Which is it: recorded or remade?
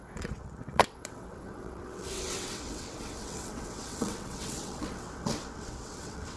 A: remade